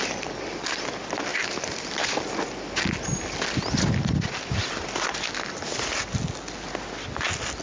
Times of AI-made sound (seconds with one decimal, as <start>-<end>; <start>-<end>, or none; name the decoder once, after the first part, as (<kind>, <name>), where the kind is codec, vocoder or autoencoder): none